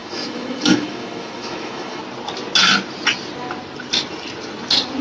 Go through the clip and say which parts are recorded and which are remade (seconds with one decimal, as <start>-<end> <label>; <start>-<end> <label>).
0.0-2.0 remade; 2.0-5.0 recorded